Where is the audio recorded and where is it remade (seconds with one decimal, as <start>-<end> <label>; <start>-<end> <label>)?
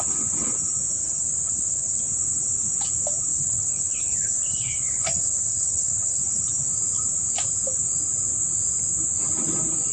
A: 0.0-1.0 recorded; 1.0-2.0 remade; 2.0-3.3 recorded; 3.3-6.2 remade; 6.2-9.9 recorded